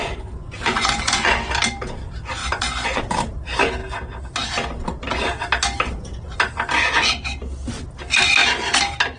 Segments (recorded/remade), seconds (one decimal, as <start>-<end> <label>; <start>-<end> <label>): 0.0-1.3 remade; 1.3-2.4 recorded; 2.4-3.0 remade; 3.0-9.2 recorded